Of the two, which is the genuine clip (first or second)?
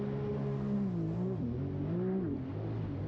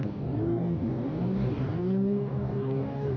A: first